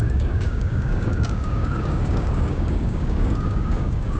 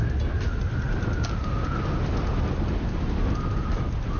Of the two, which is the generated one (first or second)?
first